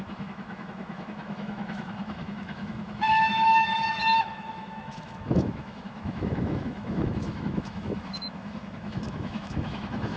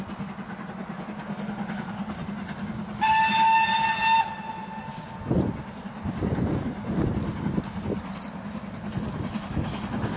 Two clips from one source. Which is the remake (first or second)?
first